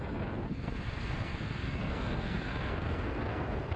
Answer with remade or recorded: remade